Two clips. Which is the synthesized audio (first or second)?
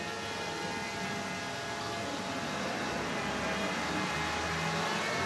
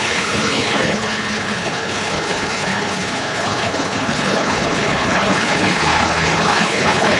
second